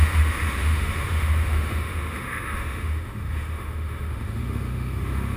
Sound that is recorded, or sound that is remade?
remade